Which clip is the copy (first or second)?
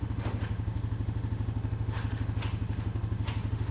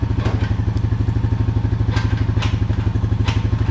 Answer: first